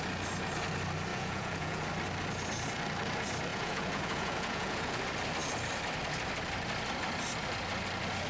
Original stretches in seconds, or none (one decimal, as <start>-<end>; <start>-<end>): 0.0-1.1; 1.8-3.5; 5.0-8.3